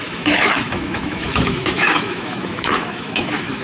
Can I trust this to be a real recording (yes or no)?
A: no